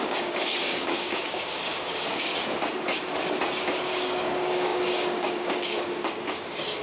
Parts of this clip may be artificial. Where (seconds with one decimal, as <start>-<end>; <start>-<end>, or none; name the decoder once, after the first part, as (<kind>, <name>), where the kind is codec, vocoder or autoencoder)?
0.0-2.3 (codec, DAC); 3.8-6.8